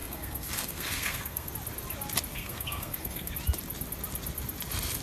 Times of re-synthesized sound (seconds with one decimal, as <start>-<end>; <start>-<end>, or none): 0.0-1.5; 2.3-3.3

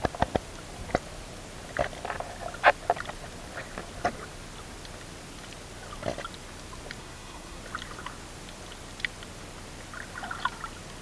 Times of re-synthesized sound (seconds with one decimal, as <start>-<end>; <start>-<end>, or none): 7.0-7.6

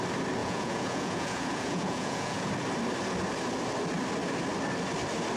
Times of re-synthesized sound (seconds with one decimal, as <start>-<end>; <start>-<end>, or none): 0.4-2.5

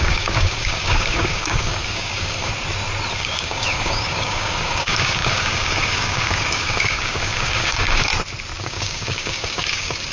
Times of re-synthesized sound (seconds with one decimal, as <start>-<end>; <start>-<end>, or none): 0.0-2.5; 3.1-8.1; 8.6-10.1

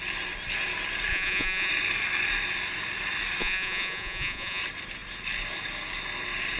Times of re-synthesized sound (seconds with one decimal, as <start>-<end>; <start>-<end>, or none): 1.1-1.7; 3.4-4.6